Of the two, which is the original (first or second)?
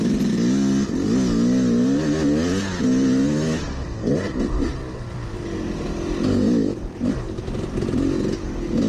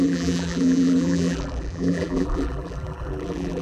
first